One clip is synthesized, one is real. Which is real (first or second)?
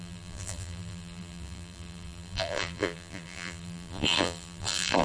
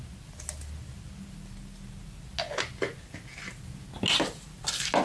second